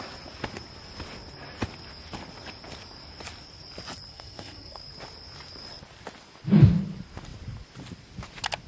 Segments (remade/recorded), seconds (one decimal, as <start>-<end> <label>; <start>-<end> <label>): 0.0-4.1 recorded; 4.1-4.8 remade; 4.8-8.7 recorded